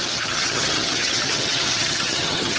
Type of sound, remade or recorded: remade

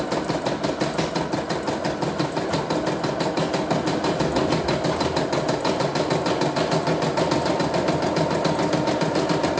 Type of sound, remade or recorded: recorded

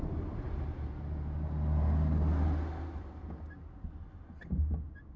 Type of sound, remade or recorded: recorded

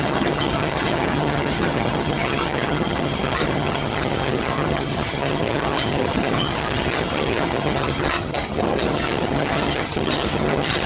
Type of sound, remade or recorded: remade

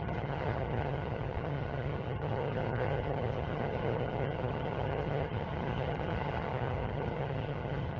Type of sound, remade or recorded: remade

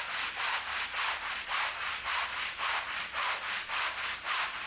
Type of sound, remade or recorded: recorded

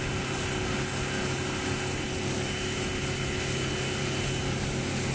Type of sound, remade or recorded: recorded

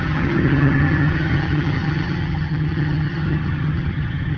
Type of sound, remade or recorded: remade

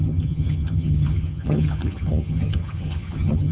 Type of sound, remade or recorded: remade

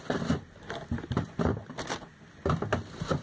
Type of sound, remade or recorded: recorded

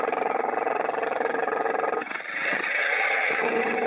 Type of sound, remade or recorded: remade